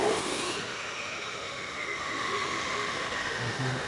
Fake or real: fake